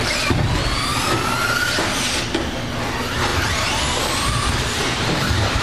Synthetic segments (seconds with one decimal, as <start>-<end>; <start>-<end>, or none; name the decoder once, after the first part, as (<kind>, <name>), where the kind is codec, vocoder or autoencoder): 3.3-5.6 (vocoder, BigVGAN v2)